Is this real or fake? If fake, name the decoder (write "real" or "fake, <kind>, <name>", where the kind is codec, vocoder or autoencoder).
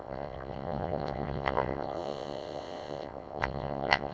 fake, vocoder, WaveNeXt